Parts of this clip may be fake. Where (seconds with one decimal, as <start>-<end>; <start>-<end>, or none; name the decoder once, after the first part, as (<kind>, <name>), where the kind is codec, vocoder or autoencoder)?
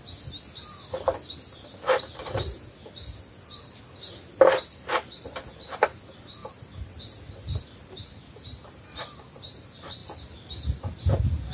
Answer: none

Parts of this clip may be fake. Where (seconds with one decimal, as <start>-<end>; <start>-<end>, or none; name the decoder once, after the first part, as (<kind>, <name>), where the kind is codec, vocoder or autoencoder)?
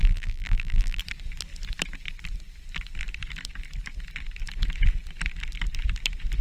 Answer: 0.0-1.0 (vocoder, BigVGAN v2)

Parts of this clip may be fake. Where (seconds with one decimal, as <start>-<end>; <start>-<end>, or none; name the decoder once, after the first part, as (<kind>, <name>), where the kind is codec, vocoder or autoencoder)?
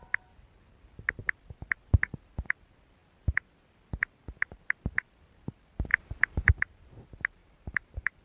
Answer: 5.9-6.5 (vocoder, BigVGAN v2); 7.4-8.2